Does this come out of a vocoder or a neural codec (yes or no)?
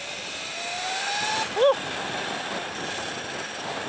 no